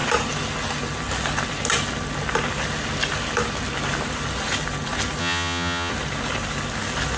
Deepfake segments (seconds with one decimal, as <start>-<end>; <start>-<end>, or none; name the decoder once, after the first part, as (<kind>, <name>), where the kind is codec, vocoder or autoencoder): 5.2-5.9 (vocoder, HiFi-GAN)